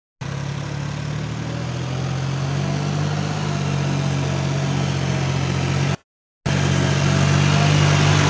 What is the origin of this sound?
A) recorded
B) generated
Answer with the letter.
A